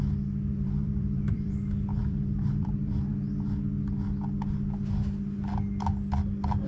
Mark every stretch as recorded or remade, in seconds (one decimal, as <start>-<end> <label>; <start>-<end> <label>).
0.0-0.5 recorded; 0.5-1.5 remade; 1.5-2.0 recorded; 2.0-3.1 remade; 3.1-6.7 recorded